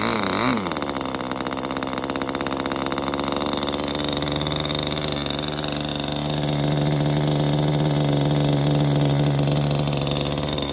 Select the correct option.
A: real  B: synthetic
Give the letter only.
A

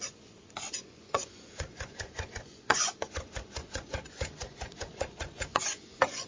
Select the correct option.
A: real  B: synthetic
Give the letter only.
B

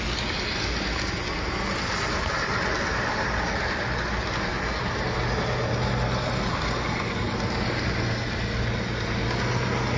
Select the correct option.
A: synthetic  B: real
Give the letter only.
B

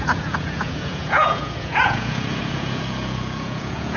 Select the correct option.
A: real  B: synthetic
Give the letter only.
B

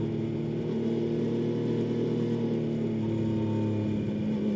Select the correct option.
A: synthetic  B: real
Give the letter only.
B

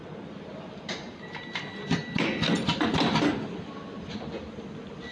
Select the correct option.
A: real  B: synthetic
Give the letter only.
A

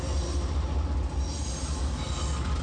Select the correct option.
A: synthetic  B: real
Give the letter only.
B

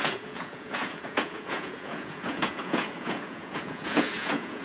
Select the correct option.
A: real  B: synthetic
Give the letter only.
B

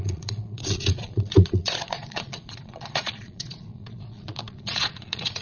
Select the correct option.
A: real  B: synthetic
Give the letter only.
B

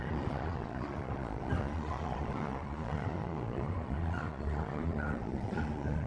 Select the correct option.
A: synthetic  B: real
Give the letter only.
A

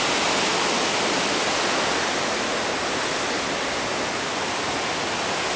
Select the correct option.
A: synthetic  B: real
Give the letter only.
B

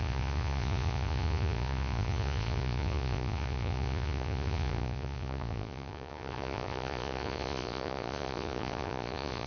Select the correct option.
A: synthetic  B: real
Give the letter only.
A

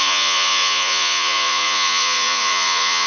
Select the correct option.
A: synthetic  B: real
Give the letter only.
A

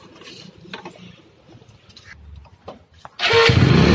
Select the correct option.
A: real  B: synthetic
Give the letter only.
A